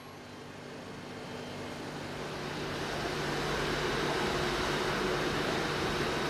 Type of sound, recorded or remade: recorded